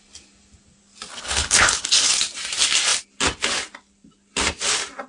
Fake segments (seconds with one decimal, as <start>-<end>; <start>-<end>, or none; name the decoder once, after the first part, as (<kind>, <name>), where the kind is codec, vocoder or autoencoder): 1.1-2.1 (codec, HILCodec)